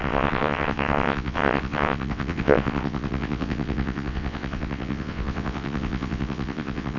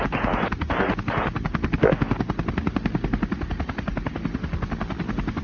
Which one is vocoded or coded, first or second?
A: first